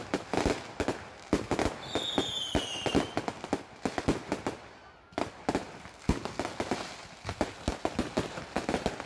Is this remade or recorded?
recorded